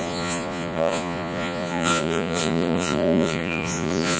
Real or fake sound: fake